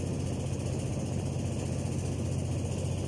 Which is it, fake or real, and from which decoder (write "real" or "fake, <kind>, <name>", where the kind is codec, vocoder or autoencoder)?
real